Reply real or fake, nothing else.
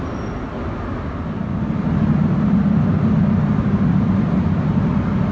real